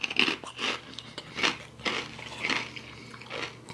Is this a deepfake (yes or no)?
no